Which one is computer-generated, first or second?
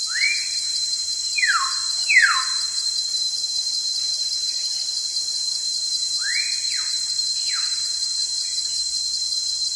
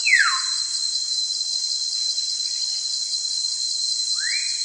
first